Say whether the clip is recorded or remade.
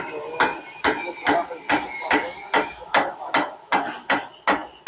recorded